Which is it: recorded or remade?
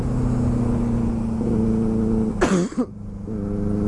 recorded